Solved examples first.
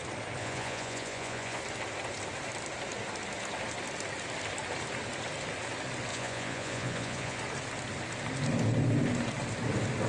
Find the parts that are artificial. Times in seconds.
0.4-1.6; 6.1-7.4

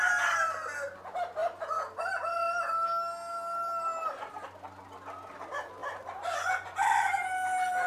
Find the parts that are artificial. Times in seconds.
5.8-7.9